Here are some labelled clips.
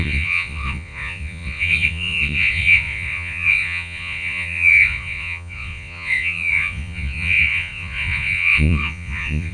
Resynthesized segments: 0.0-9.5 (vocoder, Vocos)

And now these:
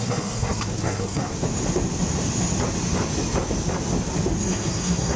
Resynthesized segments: 0.0-1.3 (codec, SNAC); 4.4-5.2

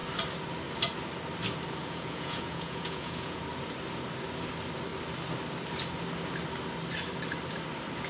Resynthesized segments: 1.8-3.4 (vocoder, Vocos)

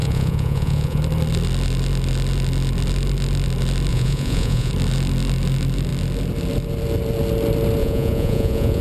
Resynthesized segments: 0.0-1.0 (vocoder, Vocos); 3.9-4.7; 7.8-8.8

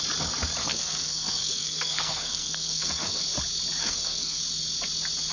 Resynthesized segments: 0.6-3.2 (codec, SNAC); 3.8-4.4

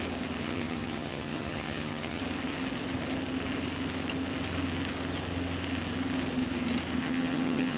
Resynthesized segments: 0.4-2.2 (vocoder, HiFi-GAN); 7.0-7.8

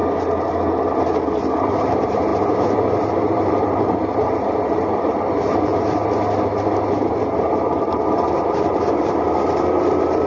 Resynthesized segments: 1.5-5.7 (vocoder, BigVGAN v2); 6.9-10.3

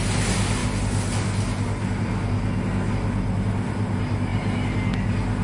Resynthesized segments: none